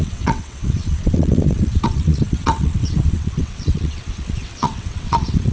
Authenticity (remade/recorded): remade